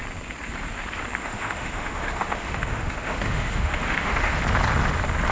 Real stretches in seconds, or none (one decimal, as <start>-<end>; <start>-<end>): 0.0-1.2; 4.4-5.3